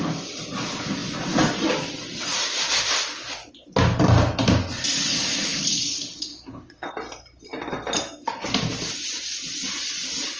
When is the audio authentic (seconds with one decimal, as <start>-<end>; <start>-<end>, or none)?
0.0-5.1; 6.9-10.4